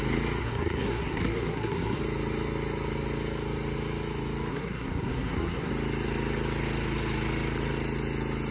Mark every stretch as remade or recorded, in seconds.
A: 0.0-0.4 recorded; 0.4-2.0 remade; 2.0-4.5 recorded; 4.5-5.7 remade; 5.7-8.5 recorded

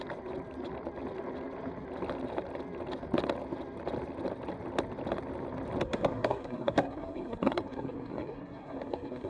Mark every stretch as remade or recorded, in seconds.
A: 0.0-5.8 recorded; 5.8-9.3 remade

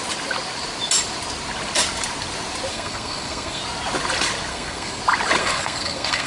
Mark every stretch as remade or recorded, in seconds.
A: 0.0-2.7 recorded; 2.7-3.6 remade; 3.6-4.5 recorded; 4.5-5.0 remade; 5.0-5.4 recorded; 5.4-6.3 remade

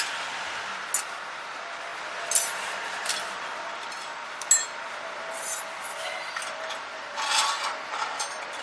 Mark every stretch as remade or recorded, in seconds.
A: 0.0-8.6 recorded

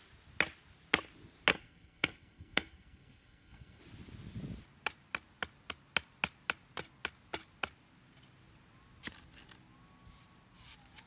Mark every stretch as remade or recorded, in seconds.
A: 0.0-1.5 recorded; 1.5-3.8 remade; 3.8-11.1 recorded